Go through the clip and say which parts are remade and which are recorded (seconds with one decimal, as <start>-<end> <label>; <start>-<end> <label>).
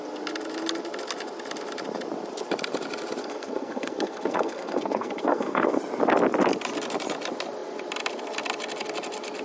0.0-3.2 recorded; 3.2-5.8 remade; 5.8-9.4 recorded